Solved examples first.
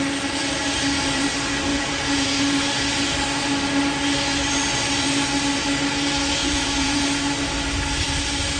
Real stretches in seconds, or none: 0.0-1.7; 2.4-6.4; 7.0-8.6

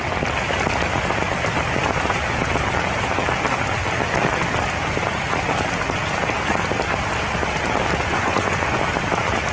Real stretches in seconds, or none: 0.0-8.1; 8.8-9.5

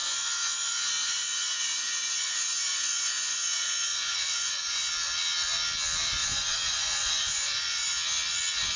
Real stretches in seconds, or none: 4.9-6.2; 7.9-8.8

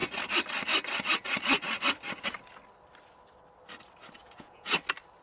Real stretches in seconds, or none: 0.0-4.2; 4.7-5.2